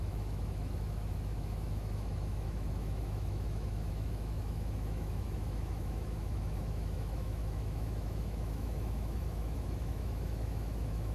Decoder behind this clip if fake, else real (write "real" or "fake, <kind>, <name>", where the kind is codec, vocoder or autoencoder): fake, autoencoder, DAC-VAE